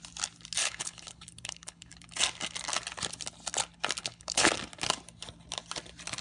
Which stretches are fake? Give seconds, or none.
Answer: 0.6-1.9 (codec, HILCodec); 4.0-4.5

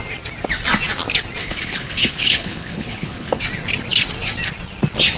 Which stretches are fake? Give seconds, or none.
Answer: 1.4-3.4 (codec, HILCodec)

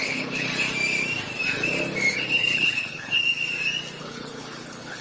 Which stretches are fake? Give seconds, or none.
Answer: 0.0-0.5 (codec, HILCodec); 2.1-3.2; 4.0-5.0

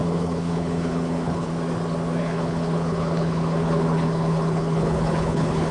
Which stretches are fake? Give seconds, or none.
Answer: 0.0-1.5 (codec, HILCodec); 2.2-5.7

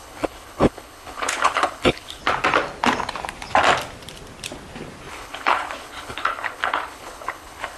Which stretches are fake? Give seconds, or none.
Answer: 0.0-2.2 (codec, HILCodec); 5.1-7.8